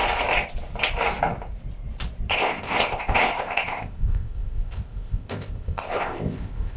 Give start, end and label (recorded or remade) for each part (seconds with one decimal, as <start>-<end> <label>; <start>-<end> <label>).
0.0-2.3 recorded; 2.3-6.8 remade